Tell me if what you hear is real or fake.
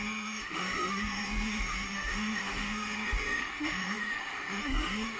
fake